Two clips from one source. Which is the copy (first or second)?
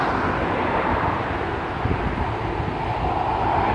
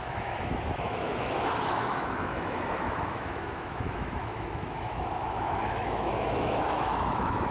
second